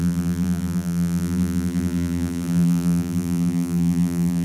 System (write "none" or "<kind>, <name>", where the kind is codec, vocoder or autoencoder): vocoder, BigVGAN v2